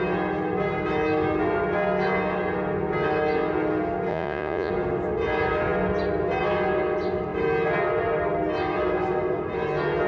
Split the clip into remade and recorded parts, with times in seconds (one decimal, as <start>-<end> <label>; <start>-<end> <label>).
0.0-4.1 recorded; 4.1-4.7 remade; 4.7-10.1 recorded

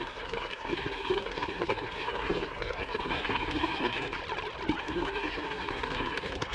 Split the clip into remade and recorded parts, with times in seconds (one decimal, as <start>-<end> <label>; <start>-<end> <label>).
0.0-4.2 remade; 4.2-4.8 recorded; 4.8-6.5 remade